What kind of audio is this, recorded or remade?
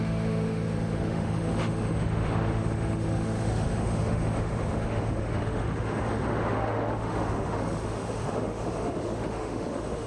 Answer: remade